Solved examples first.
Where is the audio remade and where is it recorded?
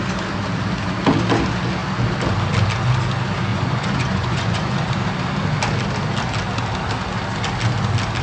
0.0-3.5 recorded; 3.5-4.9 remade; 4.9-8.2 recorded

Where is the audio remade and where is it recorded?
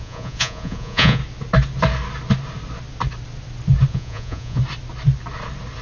0.0-1.2 remade; 1.2-3.9 recorded; 3.9-4.6 remade; 4.6-5.8 recorded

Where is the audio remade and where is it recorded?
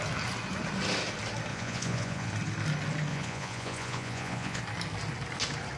0.0-1.5 recorded; 1.5-2.3 remade; 2.3-3.1 recorded; 3.1-4.6 remade; 4.6-5.8 recorded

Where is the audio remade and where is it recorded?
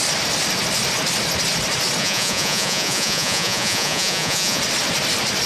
0.0-2.0 recorded; 2.0-4.6 remade; 4.6-5.5 recorded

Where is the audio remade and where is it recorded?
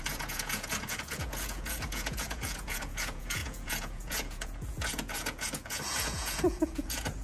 0.0-7.2 remade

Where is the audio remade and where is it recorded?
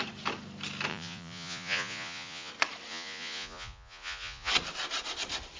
0.0-0.9 recorded; 0.9-2.5 remade; 2.5-2.9 recorded; 2.9-4.5 remade; 4.5-5.6 recorded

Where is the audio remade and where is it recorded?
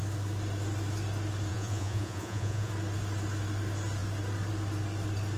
0.0-1.5 recorded; 1.5-2.7 remade; 2.7-5.4 recorded